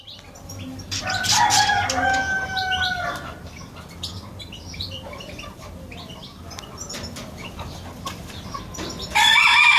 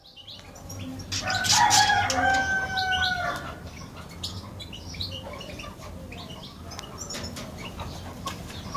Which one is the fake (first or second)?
first